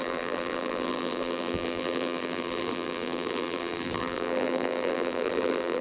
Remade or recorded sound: remade